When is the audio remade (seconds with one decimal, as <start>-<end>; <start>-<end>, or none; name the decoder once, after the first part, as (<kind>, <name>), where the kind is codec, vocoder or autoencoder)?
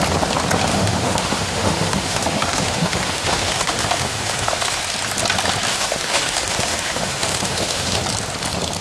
0.7-4.8 (autoencoder, DAC-VAE); 5.7-8.0